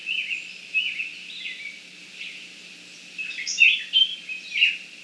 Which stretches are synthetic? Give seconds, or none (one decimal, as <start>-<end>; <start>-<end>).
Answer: none